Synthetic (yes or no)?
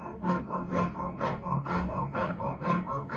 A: yes